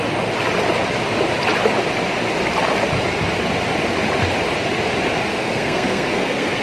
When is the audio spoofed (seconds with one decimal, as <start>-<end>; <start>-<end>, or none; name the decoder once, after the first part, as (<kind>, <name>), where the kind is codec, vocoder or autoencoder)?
5.3-6.6 (codec, SNAC)